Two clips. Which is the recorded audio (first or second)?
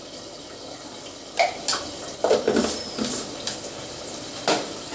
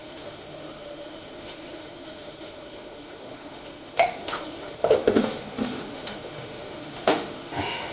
first